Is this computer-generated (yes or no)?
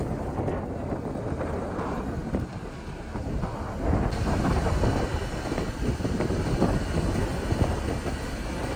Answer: no